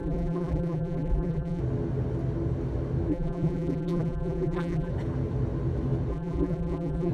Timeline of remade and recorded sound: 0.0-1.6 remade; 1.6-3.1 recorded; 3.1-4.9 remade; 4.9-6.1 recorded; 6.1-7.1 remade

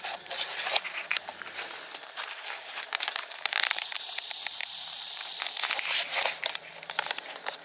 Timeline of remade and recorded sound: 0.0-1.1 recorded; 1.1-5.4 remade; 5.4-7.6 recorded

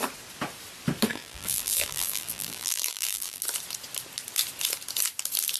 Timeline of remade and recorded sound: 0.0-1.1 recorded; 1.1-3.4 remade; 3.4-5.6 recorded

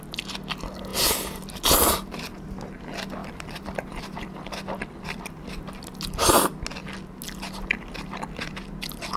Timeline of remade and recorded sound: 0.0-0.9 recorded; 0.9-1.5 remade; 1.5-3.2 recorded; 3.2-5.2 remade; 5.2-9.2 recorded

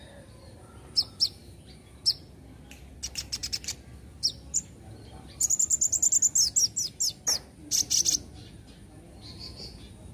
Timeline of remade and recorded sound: 0.0-3.4 recorded; 3.4-6.2 remade; 6.2-10.1 recorded